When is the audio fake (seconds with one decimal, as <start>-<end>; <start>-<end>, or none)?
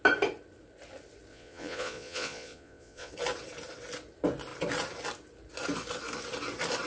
1.3-3.1